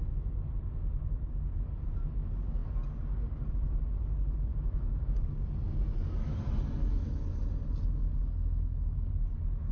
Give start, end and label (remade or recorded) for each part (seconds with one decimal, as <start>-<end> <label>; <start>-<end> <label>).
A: 0.0-4.5 recorded; 4.5-5.0 remade; 5.0-6.8 recorded; 6.8-7.4 remade; 7.4-9.7 recorded